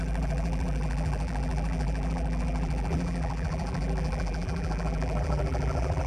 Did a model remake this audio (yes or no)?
yes